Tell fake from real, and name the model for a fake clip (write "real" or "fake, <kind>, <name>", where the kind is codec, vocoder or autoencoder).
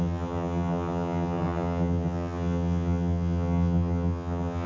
fake, vocoder, HiFi-GAN